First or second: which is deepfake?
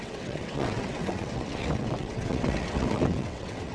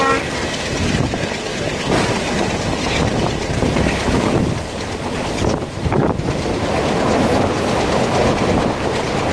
first